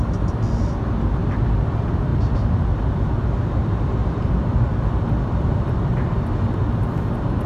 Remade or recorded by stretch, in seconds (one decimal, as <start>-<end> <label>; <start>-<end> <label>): 0.0-1.2 recorded; 1.2-1.7 remade; 1.7-4.0 recorded; 4.0-6.3 remade; 6.3-7.5 recorded